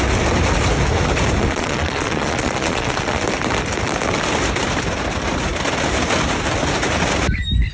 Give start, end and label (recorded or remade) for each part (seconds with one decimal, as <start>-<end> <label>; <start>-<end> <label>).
0.0-1.4 recorded; 1.4-3.2 remade; 3.2-7.7 recorded